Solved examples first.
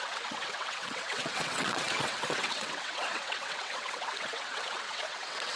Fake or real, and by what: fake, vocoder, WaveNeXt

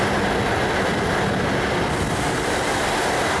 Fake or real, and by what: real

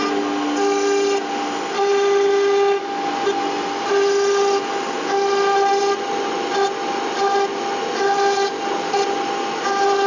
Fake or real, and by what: real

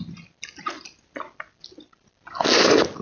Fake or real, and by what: real